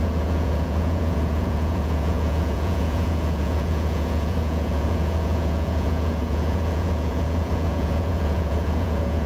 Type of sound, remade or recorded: remade